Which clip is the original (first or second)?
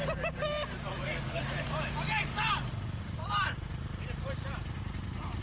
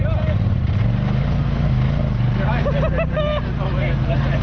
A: second